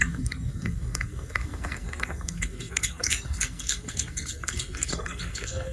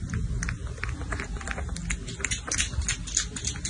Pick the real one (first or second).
second